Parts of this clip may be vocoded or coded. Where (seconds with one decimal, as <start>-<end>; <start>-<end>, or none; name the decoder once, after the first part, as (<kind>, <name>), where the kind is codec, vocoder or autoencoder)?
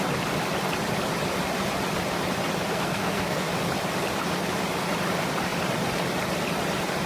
2.7-3.5 (codec, SNAC)